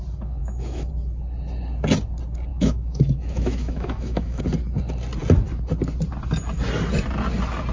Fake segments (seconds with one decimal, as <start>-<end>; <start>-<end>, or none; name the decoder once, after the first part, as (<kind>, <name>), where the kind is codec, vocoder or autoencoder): 0.4-0.9 (autoencoder, DAC-VAE); 2.5-4.4